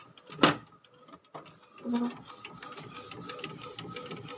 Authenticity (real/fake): real